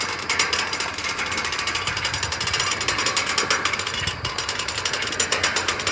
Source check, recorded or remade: remade